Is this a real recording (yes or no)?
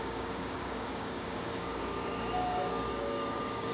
no